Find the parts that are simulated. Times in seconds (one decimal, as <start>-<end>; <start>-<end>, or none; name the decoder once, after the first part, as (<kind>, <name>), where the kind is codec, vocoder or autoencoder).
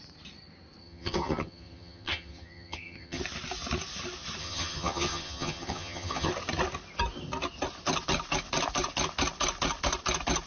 0.8-3.2 (vocoder, HiFi-GAN); 4.4-6.3